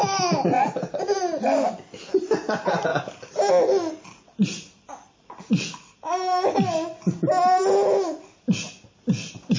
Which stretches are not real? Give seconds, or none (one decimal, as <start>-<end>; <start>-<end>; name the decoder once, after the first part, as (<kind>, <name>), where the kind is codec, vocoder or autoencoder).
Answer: none